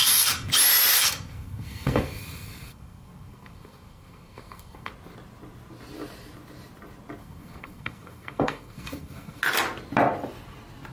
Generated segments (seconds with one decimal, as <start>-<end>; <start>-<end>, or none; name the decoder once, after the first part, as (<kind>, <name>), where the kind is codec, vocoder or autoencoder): 0.0-0.5 (codec, SNAC); 1.0-4.9; 7.2-9.4